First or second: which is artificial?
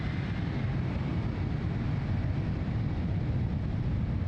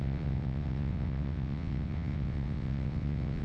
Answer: second